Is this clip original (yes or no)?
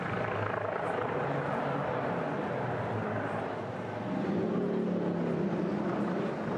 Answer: yes